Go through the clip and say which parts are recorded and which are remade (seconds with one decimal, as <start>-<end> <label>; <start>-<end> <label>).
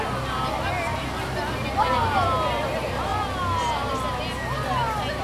0.0-5.2 recorded